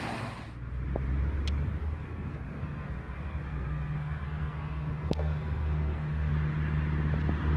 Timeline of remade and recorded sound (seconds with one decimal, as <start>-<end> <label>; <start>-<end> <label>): 0.0-1.8 recorded; 1.8-6.3 remade; 6.3-7.6 recorded